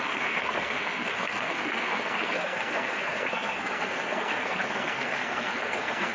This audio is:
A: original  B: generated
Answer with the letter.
B